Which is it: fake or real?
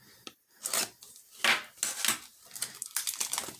real